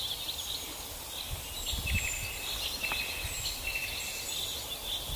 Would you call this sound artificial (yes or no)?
no